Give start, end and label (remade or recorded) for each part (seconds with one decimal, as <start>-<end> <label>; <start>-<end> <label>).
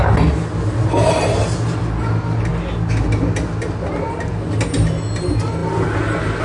0.0-6.4 recorded